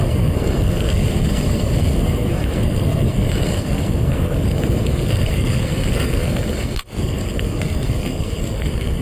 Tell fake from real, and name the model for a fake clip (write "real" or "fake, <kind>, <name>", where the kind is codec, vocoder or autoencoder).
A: fake, codec, SNAC